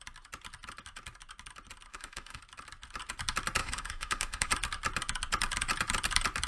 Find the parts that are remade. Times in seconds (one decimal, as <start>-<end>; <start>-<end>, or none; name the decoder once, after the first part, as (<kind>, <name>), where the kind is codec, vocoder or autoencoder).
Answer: 1.9-2.4 (autoencoder, DAC-VAE); 3.6-4.5